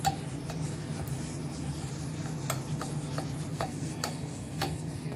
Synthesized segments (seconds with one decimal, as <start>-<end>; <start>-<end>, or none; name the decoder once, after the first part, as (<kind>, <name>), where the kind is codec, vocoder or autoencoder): 3.5-5.2 (codec, SNAC)